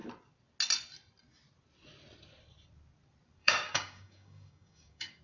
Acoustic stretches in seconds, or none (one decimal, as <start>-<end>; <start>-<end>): 0.0-3.4